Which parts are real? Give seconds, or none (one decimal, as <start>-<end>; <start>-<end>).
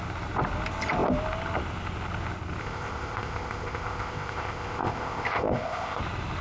0.0-2.6; 6.0-6.4